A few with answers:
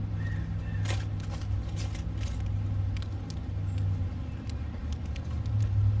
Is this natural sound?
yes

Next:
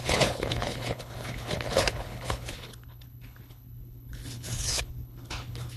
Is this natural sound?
no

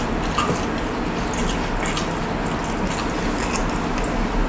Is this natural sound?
yes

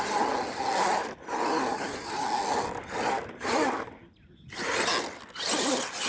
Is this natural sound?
yes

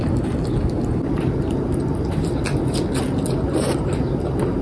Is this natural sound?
yes